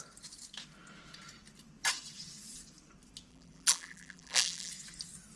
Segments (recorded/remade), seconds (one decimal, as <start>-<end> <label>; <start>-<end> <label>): 0.0-3.3 recorded; 3.3-4.7 remade; 4.7-5.4 recorded